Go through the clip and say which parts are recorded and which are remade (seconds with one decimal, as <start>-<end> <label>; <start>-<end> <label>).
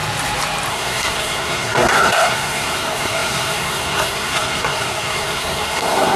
0.0-0.7 recorded; 0.7-6.2 remade